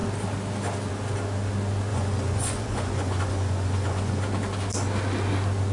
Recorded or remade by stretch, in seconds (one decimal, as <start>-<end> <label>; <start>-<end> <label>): 0.0-1.9 recorded; 1.9-4.2 remade; 4.2-5.7 recorded